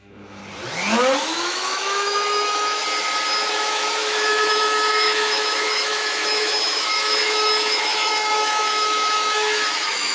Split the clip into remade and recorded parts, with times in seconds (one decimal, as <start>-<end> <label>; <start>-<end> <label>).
0.0-0.4 remade; 0.4-1.2 recorded; 1.2-2.8 remade; 2.8-3.5 recorded; 3.5-10.1 remade